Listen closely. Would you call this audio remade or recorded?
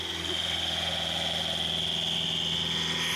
recorded